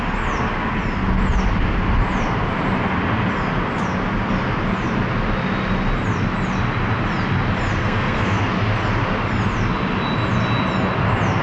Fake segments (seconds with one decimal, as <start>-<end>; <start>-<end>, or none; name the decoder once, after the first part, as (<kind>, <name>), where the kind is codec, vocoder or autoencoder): 7.8-8.4 (codec, SNAC)